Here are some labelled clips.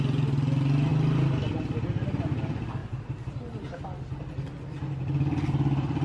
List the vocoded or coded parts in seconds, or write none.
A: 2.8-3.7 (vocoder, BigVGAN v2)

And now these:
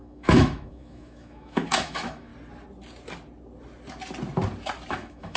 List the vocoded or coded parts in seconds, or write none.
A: 0.0-2.3 (autoencoder, DAC-VAE); 4.9-5.4

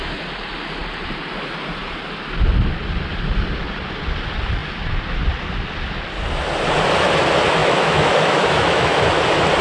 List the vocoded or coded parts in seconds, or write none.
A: 7.6-9.0 (autoencoder, DAC-VAE)

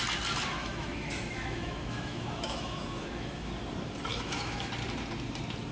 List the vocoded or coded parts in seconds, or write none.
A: 0.6-3.5 (autoencoder, DAC-VAE); 4.1-4.7

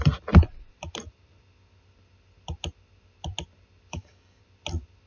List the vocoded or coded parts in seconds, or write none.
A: 3.9-4.4 (codec, DAC)

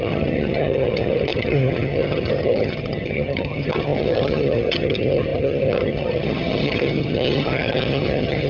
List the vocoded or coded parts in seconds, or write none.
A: 0.0-8.5 (vocoder, HiFi-GAN)

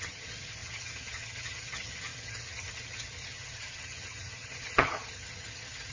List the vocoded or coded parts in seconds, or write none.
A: 0.0-5.9 (vocoder, HiFi-GAN)